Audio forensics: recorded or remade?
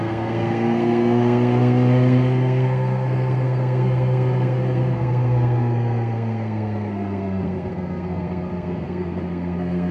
remade